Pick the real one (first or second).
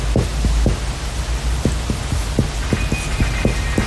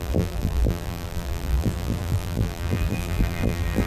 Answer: first